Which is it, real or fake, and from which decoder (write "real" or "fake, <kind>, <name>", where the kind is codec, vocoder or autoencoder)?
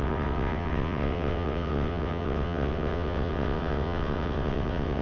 fake, vocoder, WaveNeXt